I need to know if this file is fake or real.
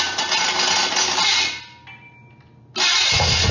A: real